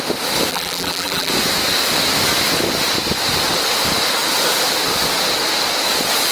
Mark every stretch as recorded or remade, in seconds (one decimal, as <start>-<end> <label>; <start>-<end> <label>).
0.0-0.5 recorded; 0.5-1.3 remade; 1.3-6.3 recorded